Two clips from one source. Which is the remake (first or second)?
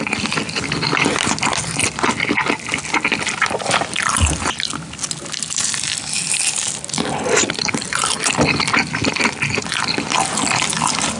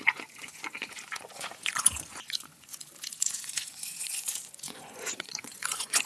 second